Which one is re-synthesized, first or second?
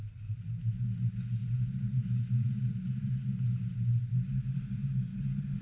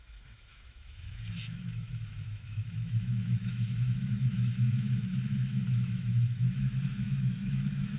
second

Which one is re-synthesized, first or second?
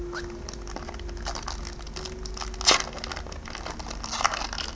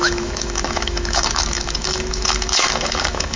second